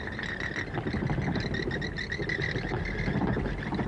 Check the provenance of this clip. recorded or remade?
recorded